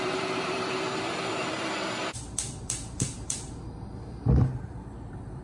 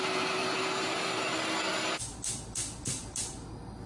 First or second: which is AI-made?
first